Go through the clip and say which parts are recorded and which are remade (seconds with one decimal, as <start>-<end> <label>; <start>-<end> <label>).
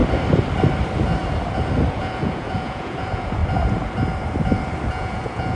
0.0-1.9 recorded; 1.9-3.4 remade; 3.4-4.9 recorded; 4.9-5.6 remade